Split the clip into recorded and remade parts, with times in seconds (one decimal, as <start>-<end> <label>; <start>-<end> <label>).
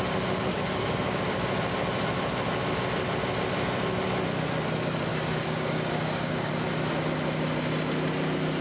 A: 0.0-0.4 recorded; 0.4-1.2 remade; 1.2-5.1 recorded; 5.1-6.5 remade; 6.5-8.6 recorded